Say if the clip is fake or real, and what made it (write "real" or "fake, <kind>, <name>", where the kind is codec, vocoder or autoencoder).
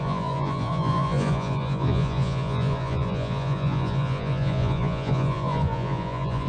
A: fake, vocoder, Vocos